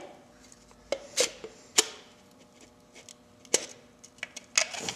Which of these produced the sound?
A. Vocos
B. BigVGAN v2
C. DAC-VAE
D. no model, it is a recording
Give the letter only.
D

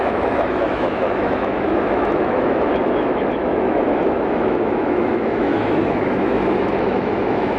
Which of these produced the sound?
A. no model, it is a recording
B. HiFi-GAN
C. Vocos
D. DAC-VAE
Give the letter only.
D